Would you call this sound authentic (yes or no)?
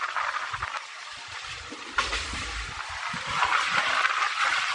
yes